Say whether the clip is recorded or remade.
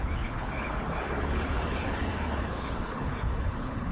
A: remade